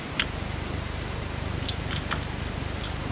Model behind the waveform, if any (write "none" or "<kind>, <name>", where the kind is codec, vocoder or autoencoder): none